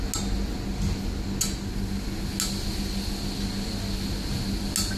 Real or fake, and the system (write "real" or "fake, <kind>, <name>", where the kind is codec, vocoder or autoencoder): real